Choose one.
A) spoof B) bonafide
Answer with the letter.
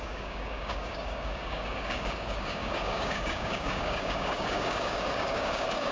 A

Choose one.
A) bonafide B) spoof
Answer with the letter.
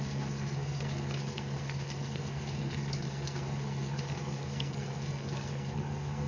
B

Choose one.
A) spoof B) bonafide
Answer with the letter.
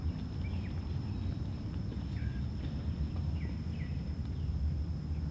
B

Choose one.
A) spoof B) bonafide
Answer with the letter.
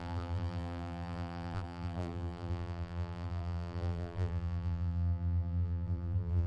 A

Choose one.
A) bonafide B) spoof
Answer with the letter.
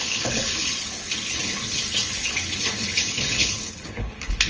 B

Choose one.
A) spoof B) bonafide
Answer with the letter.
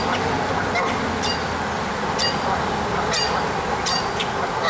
B